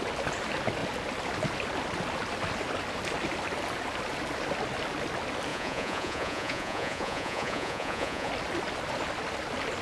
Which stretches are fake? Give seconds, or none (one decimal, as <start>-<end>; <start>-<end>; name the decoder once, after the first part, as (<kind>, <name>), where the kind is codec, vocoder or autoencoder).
5.5-8.3 (vocoder, Vocos)